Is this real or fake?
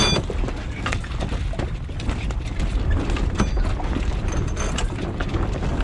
real